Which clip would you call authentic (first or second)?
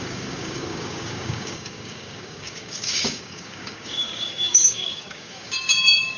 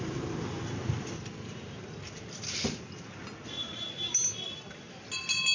second